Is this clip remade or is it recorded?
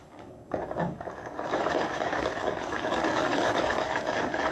remade